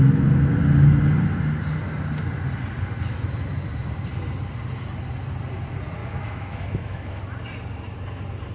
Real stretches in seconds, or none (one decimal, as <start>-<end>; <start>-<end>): 0.0-6.0; 7.2-8.5